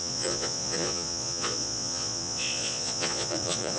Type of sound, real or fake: fake